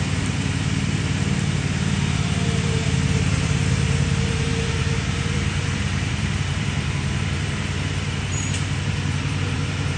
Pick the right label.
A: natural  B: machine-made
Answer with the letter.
B